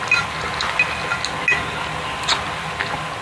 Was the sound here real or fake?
real